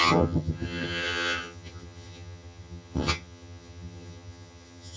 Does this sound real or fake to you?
fake